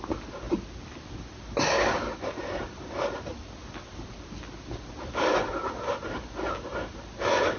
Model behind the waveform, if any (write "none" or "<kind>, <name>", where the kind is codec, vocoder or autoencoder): none